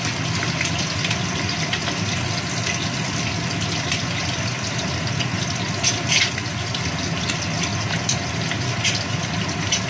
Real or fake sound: real